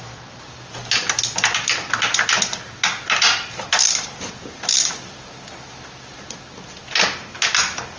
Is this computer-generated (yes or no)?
no